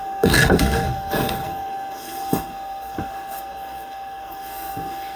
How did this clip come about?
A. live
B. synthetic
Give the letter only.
B